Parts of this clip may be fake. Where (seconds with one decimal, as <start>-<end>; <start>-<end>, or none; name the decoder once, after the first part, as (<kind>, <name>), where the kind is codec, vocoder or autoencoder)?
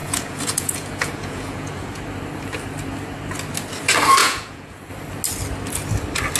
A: 0.0-2.0 (vocoder, Vocos); 4.2-4.9